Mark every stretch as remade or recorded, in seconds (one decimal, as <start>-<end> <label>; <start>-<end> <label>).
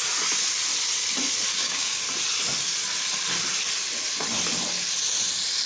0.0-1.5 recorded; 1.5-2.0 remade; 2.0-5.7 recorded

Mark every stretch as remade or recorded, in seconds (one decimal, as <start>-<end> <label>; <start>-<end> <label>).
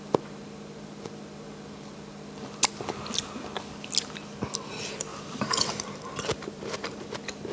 0.0-5.1 recorded; 5.1-7.1 remade; 7.1-7.5 recorded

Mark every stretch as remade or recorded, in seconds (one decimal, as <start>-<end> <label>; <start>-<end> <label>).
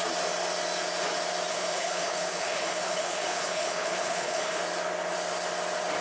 0.0-1.5 recorded; 1.5-4.6 remade; 4.6-6.0 recorded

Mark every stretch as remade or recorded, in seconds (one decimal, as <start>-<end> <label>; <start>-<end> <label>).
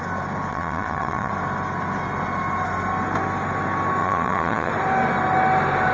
0.0-0.5 recorded; 0.5-1.3 remade; 1.3-4.0 recorded; 4.0-4.7 remade; 4.7-5.9 recorded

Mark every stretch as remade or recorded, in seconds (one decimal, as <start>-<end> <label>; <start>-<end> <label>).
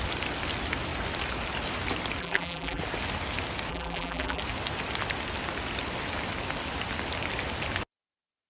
0.0-2.2 recorded; 2.2-2.8 remade; 2.8-3.7 recorded; 3.7-4.4 remade; 4.4-8.5 recorded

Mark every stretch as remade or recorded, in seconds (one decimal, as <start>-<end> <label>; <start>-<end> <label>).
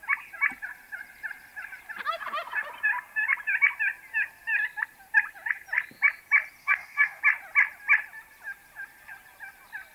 0.0-6.6 recorded; 6.6-7.2 remade; 7.2-9.9 recorded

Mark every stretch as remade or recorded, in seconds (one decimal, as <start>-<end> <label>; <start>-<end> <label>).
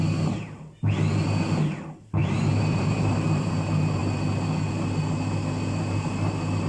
0.0-2.2 recorded; 2.2-3.5 remade; 3.5-6.7 recorded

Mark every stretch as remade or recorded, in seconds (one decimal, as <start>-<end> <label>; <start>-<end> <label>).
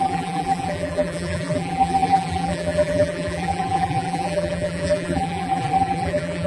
0.0-6.5 remade